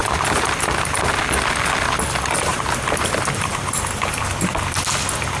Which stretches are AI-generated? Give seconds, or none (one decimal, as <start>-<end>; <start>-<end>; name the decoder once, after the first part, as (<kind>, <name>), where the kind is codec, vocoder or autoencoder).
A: 0.0-1.1 (vocoder, BigVGAN v2); 2.5-4.8